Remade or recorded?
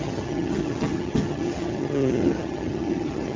remade